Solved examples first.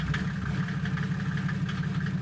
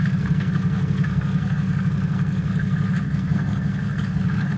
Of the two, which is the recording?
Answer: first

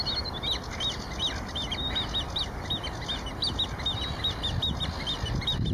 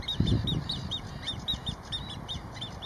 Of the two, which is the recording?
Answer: first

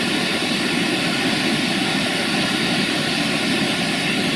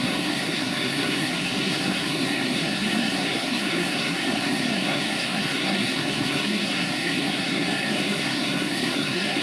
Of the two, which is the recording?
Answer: first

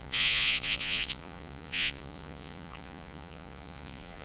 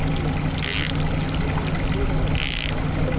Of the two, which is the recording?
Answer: second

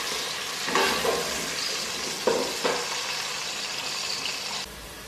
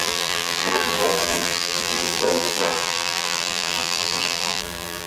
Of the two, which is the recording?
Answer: first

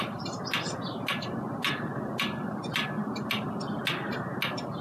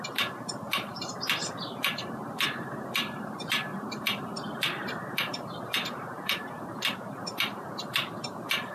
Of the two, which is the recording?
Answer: first